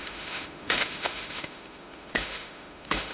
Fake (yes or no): yes